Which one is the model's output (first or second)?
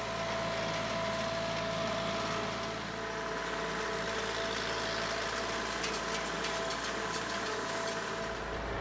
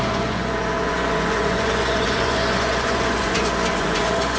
second